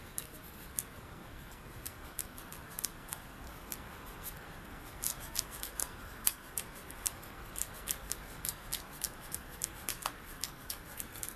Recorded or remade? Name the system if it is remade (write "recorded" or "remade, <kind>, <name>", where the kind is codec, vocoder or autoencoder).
remade, codec, SNAC